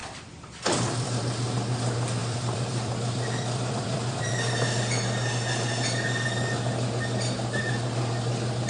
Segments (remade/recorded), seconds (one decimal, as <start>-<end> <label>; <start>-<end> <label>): 0.0-1.2 remade; 1.2-2.2 recorded; 2.2-4.3 remade; 4.3-8.7 recorded